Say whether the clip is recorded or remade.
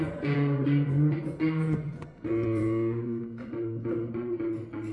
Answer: remade